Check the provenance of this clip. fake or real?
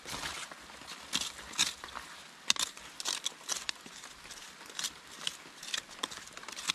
real